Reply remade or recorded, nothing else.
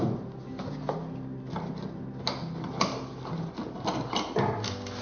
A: recorded